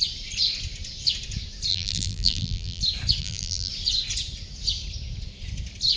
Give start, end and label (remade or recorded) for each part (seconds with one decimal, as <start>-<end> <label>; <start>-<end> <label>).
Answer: 0.0-1.7 recorded; 1.7-2.8 remade; 2.8-3.2 recorded; 3.2-3.7 remade; 3.7-6.0 recorded